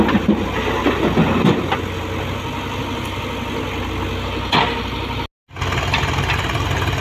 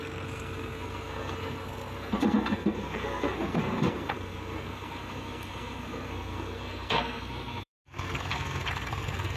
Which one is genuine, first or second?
first